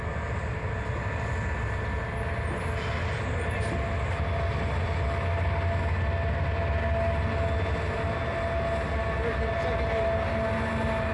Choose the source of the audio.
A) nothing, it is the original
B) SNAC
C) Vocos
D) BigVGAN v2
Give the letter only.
A